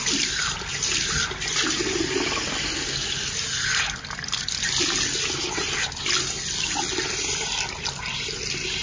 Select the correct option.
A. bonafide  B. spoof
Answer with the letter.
A